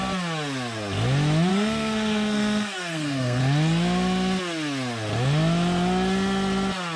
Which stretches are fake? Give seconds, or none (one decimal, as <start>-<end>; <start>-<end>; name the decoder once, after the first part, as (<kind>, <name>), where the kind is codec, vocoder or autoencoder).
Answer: 1.5-3.4 (codec, SNAC)